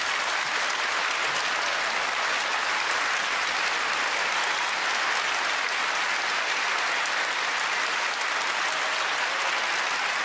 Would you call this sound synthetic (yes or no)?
no